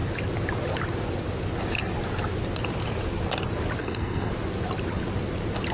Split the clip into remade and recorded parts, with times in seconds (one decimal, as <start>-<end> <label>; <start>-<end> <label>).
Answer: 0.0-3.8 recorded; 3.8-4.3 remade; 4.3-5.7 recorded